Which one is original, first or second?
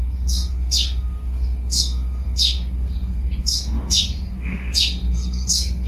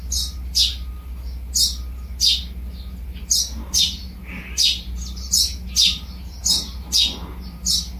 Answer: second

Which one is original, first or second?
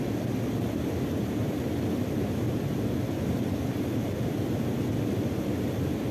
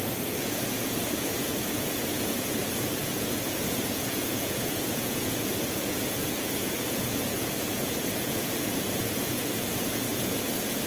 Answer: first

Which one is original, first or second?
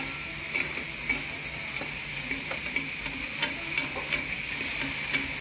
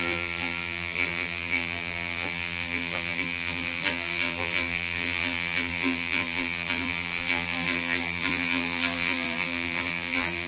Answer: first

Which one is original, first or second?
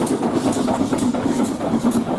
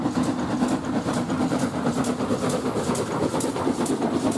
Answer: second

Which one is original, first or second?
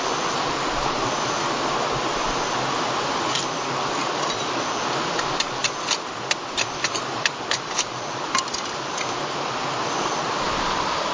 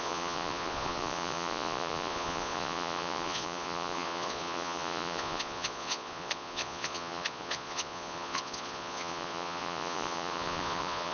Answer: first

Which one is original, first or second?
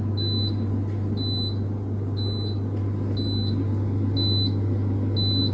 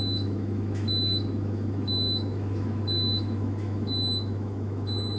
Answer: first